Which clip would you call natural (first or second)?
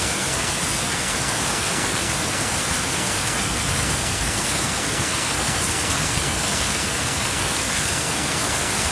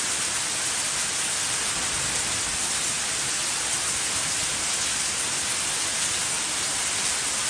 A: second